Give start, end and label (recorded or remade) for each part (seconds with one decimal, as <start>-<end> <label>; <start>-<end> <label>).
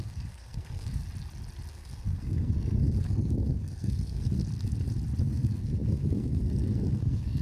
0.0-1.0 remade; 1.0-1.7 recorded; 1.7-4.4 remade; 4.4-5.2 recorded; 5.2-7.4 remade